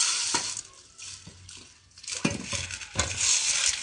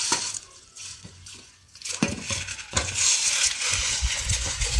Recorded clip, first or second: first